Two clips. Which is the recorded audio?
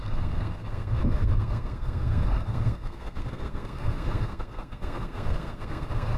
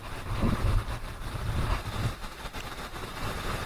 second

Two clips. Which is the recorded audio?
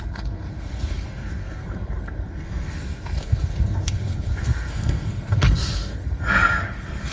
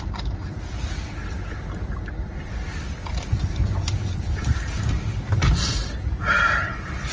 second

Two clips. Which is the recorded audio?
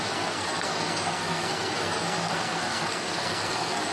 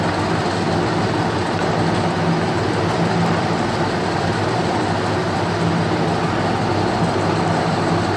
second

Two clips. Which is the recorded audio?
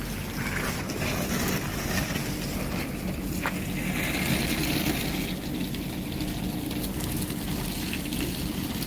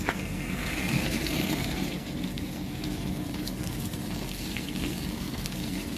first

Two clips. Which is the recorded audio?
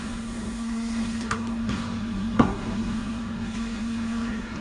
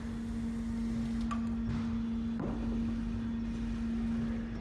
second